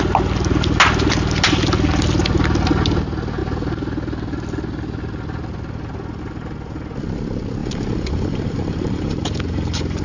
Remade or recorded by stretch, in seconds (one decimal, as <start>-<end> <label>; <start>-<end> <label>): 0.0-7.6 recorded; 7.6-10.0 remade